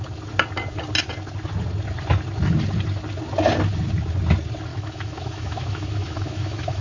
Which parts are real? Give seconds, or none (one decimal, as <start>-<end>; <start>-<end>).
0.0-4.7